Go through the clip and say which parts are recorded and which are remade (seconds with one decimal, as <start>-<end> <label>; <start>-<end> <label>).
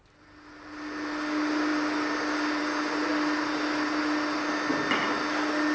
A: 0.0-5.7 recorded